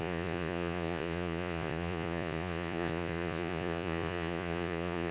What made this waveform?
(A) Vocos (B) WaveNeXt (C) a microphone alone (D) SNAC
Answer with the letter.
A